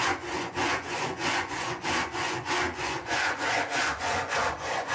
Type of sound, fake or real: fake